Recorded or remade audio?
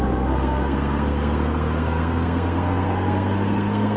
remade